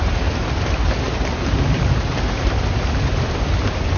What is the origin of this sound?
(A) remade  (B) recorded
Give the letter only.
A